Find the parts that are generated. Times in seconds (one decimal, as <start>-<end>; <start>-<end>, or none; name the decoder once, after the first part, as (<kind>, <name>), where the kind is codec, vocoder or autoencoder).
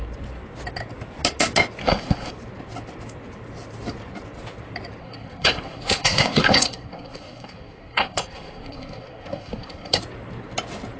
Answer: 1.8-2.3 (codec, SNAC); 5.0-10.0